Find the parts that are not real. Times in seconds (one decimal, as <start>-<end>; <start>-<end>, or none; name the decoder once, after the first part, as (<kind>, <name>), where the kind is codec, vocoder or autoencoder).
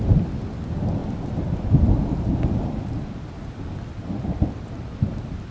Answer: none